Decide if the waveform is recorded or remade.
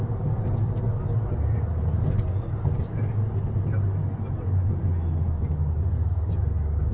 recorded